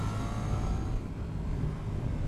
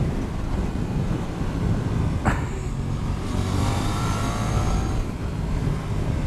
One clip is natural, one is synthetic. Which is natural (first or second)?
first